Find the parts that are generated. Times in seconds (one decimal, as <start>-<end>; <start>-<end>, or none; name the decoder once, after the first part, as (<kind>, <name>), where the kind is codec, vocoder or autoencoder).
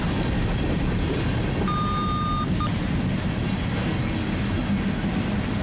none